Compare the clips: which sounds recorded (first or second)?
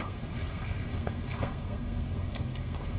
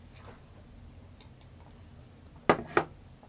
second